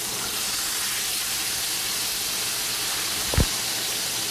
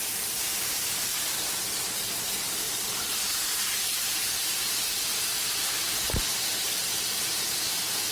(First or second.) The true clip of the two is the first